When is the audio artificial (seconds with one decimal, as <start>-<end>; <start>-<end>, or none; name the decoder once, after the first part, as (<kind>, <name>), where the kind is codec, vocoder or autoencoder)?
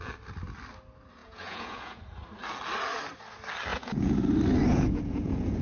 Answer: 1.2-2.0 (vocoder, Vocos); 3.7-4.2; 4.7-5.6